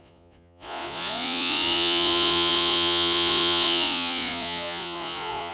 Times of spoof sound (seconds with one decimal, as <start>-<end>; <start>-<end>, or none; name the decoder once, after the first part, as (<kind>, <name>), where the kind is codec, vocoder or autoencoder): 0.0-5.5 (vocoder, Vocos)

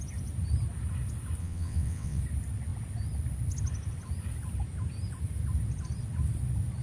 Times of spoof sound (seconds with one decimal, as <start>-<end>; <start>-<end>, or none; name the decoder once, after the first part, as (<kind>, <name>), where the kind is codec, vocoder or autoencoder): 1.4-2.2 (vocoder, WaveNeXt)

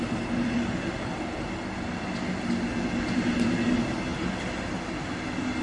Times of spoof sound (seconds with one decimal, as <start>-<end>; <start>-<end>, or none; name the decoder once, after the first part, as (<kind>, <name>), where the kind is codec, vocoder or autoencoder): 4.1-5.1 (vocoder, BigVGAN v2)

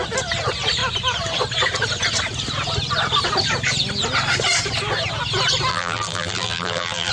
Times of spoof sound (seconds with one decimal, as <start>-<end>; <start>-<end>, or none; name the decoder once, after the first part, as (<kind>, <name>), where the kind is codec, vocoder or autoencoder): 5.7-7.1 (vocoder, BigVGAN v2)

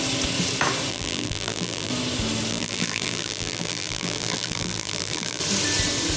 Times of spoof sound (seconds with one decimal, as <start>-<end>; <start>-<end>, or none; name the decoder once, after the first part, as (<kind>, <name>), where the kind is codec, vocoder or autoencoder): 0.9-1.9 (vocoder, BigVGAN v2); 2.5-5.4

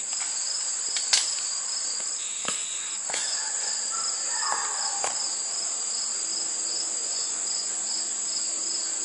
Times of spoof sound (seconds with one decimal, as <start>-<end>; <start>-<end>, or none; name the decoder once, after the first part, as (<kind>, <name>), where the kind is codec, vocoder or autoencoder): 2.6-3.7 (vocoder, Vocos); 7.0-8.0